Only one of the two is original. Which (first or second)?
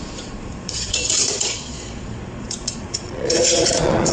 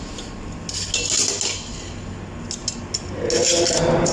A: second